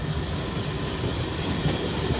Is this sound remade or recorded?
recorded